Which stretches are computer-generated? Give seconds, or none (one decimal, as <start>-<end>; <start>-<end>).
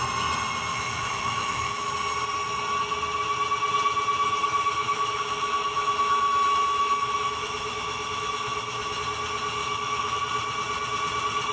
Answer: 0.7-1.9; 4.2-9.0; 9.6-10.2